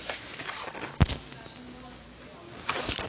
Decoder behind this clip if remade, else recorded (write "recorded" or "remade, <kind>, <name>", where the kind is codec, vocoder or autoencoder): recorded